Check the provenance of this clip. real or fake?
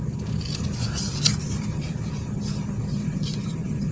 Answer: real